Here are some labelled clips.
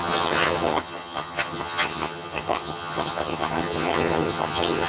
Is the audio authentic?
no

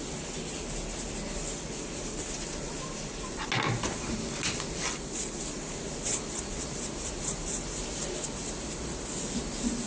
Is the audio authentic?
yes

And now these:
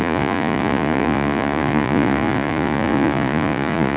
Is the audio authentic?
no